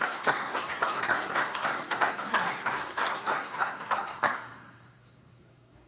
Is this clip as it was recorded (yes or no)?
no